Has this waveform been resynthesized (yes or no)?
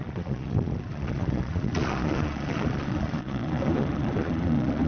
yes